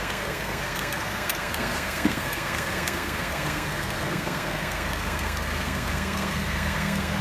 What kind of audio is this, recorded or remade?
remade